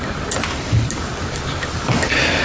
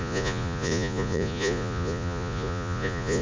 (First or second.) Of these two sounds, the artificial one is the second